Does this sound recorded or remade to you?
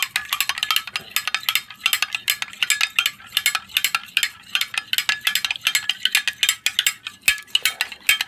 recorded